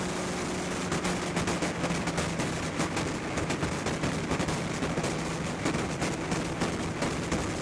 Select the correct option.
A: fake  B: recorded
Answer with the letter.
B